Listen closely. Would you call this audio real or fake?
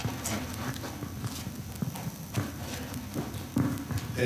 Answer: real